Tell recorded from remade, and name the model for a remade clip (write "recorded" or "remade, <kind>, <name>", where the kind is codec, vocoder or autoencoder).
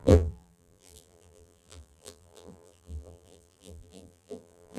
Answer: remade, vocoder, BigVGAN v2